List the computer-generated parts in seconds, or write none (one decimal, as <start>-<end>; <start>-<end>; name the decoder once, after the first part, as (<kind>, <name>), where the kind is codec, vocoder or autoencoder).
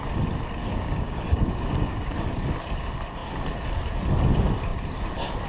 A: 0.6-2.3 (codec, DAC)